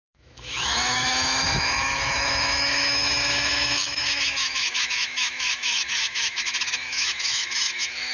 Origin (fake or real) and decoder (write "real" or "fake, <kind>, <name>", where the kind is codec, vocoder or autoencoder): fake, autoencoder, DAC-VAE